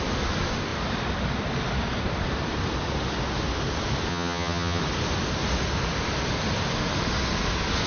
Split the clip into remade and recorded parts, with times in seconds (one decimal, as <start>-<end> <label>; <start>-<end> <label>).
0.0-4.1 recorded; 4.1-4.8 remade; 4.8-7.9 recorded